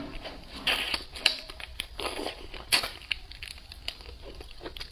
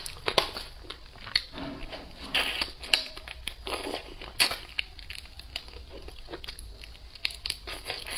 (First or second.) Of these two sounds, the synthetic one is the first